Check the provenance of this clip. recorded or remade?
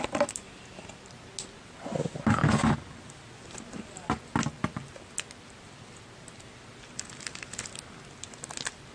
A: recorded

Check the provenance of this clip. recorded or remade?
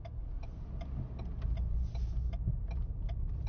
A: recorded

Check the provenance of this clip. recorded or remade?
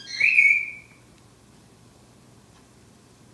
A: remade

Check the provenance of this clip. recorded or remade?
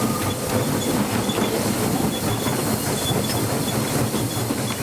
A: remade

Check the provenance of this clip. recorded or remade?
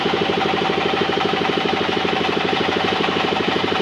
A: remade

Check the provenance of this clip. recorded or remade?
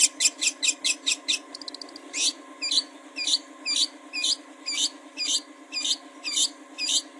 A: recorded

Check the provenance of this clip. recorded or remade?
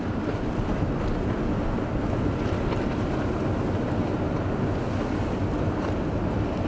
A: recorded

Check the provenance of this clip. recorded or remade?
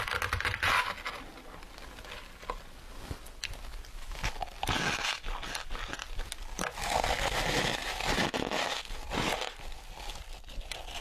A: recorded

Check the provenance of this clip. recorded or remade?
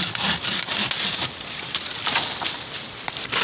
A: remade